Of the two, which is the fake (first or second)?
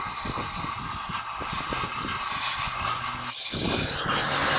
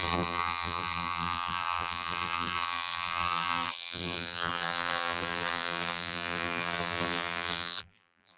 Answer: second